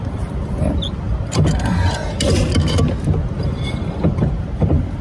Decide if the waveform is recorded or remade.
recorded